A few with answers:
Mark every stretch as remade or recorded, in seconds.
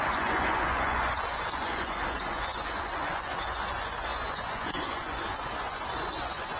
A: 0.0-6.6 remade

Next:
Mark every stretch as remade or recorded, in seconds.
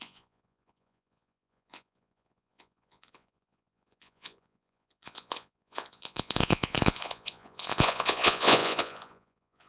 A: 0.0-9.7 remade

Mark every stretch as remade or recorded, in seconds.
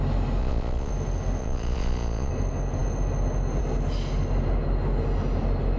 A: 0.0-0.4 recorded; 0.4-0.9 remade; 0.9-1.4 recorded; 1.4-2.3 remade; 2.3-5.8 recorded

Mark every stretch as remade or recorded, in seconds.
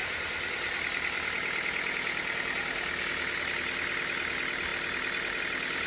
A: 0.0-5.9 recorded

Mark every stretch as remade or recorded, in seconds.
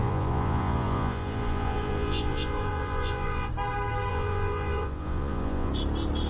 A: 0.0-3.5 remade; 3.5-4.1 recorded; 4.1-5.7 remade; 5.7-6.3 recorded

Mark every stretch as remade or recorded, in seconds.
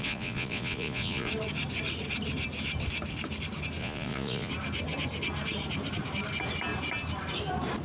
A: 0.0-1.3 remade; 1.3-3.8 recorded; 3.8-4.5 remade; 4.5-7.8 recorded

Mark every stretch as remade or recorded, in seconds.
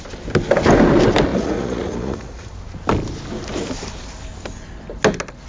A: 0.0-1.3 recorded; 1.3-2.5 remade; 2.5-5.5 recorded